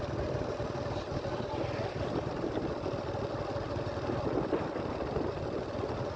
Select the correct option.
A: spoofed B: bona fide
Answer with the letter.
B